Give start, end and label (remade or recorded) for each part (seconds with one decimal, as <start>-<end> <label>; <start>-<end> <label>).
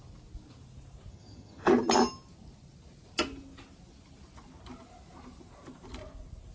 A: 0.0-1.1 recorded; 1.1-1.7 remade; 1.7-6.5 recorded